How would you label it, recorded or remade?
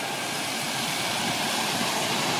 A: recorded